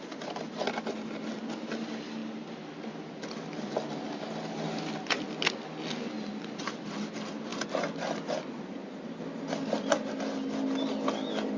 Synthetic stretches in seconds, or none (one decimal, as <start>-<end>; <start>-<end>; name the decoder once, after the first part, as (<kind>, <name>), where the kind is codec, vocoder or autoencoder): none